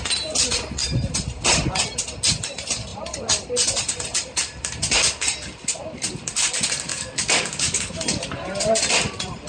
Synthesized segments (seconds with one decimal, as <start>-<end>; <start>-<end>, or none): 6.9-7.9